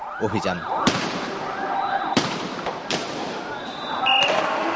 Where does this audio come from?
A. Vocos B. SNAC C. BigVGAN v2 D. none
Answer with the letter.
D